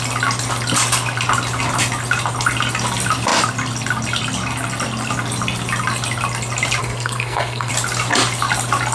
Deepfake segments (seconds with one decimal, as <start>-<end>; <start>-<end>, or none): 6.8-7.7